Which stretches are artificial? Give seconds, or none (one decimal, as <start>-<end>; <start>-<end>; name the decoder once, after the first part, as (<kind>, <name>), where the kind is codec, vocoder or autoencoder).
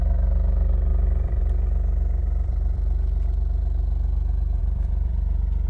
0.9-1.4 (vocoder, BigVGAN v2); 2.2-3.6; 4.6-5.7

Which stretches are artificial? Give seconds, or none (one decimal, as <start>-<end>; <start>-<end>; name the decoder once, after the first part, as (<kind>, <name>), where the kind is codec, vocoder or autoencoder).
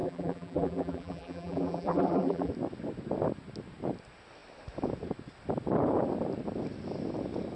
0.0-2.5 (vocoder, BigVGAN v2)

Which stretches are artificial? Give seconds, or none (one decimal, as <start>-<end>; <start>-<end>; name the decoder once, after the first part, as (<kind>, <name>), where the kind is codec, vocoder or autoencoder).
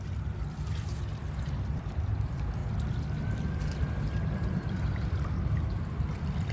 0.0-2.6 (vocoder, BigVGAN v2); 3.4-6.5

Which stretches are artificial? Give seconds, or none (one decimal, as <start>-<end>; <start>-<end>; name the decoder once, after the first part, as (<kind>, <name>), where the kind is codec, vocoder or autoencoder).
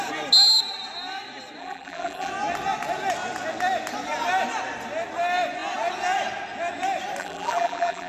1.6-2.3 (vocoder, BigVGAN v2); 7.2-8.1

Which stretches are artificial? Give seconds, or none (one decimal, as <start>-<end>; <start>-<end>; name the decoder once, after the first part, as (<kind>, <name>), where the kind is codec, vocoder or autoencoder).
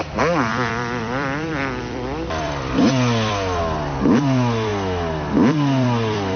0.0-4.7 (vocoder, BigVGAN v2); 5.3-6.4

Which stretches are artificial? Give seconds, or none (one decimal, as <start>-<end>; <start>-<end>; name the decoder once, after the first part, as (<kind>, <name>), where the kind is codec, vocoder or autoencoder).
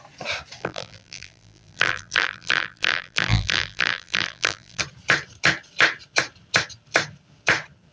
0.6-4.8 (vocoder, BigVGAN v2)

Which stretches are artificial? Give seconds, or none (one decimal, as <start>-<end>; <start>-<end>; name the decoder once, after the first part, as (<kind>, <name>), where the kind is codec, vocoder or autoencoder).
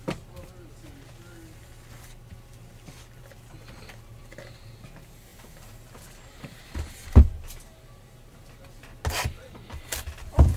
none